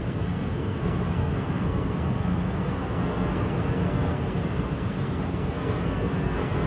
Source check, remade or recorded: remade